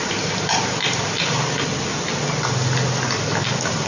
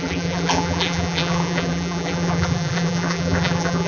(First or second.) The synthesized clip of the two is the second